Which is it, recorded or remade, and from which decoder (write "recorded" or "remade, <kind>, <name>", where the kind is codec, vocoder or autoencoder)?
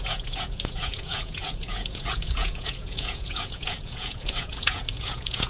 remade, vocoder, Vocos